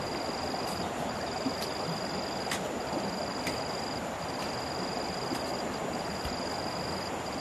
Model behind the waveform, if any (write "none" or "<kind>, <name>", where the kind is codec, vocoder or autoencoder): none